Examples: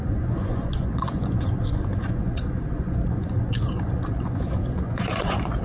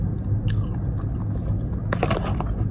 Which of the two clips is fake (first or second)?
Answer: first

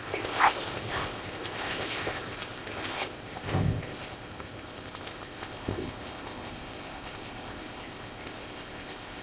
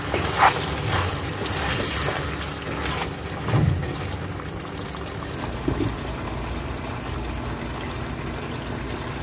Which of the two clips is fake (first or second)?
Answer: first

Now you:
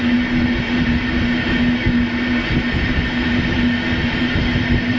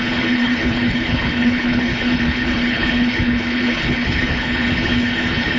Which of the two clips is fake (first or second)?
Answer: second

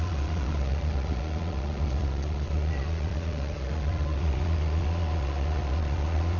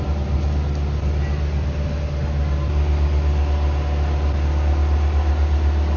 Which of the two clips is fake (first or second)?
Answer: first